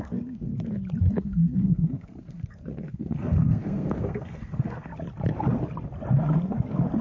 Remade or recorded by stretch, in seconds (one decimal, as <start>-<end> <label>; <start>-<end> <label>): 0.0-0.5 remade; 0.5-1.1 recorded; 1.1-4.9 remade; 4.9-7.0 recorded